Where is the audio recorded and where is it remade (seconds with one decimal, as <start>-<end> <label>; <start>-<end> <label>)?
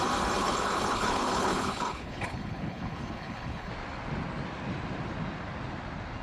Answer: 0.0-0.4 recorded; 0.4-3.7 remade; 3.7-6.2 recorded